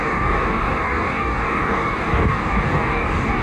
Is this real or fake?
fake